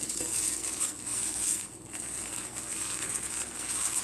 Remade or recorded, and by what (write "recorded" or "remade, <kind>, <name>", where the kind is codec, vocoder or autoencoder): remade, codec, SNAC